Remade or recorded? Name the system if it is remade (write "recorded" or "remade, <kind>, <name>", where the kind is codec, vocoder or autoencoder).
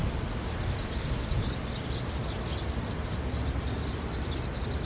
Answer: recorded